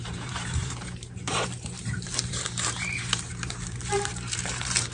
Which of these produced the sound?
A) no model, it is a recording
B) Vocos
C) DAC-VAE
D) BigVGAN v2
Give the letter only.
D